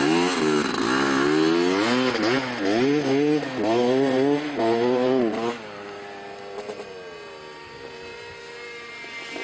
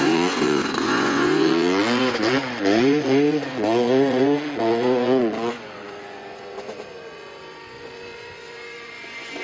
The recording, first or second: first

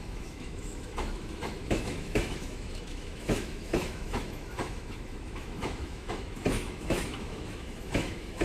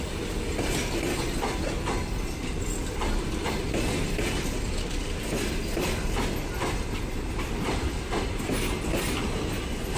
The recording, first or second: second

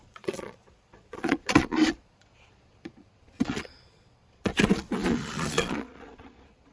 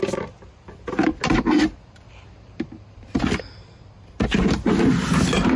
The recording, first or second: second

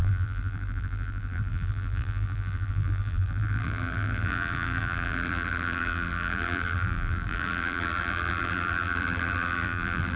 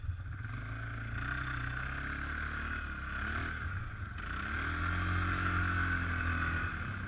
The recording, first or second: second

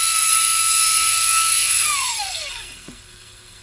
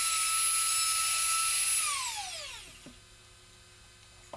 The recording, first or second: second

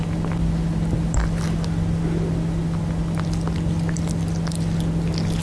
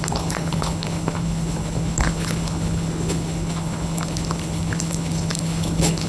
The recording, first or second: first